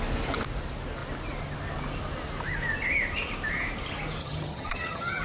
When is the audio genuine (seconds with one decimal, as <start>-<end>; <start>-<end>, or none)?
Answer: 0.0-4.2